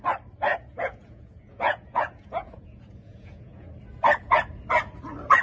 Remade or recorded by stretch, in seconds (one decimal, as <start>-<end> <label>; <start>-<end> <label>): 0.0-0.5 recorded; 0.5-3.7 remade; 3.7-5.4 recorded